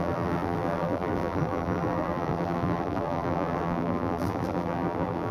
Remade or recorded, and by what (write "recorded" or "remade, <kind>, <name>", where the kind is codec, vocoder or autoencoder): remade, vocoder, BigVGAN v2